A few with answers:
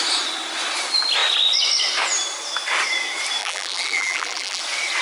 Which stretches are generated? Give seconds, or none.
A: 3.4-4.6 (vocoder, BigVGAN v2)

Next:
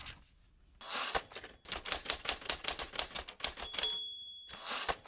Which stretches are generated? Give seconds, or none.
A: none

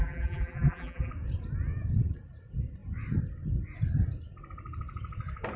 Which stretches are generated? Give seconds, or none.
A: 0.0-1.1 (vocoder, BigVGAN v2)

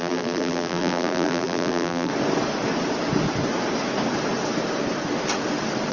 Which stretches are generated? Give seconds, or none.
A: 0.0-2.1 (vocoder, BigVGAN v2)

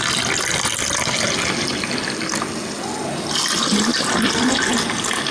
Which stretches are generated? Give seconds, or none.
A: 3.9-4.5 (vocoder, BigVGAN v2)

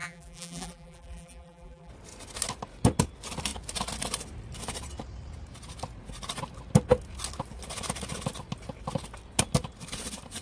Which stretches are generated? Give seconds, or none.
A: 0.0-1.9 (vocoder, BigVGAN v2)

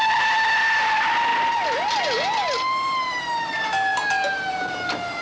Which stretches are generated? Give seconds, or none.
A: none